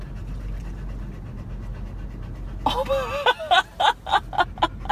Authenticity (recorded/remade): recorded